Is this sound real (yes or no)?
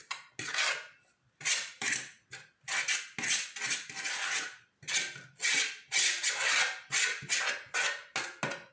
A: yes